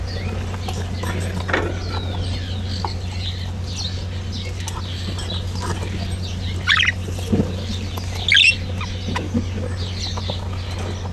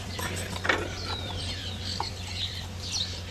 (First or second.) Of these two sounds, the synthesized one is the second